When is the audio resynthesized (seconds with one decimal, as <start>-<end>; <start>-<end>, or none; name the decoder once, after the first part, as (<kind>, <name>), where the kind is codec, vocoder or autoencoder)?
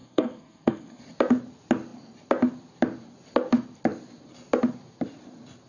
0.0-1.0 (codec, SNAC)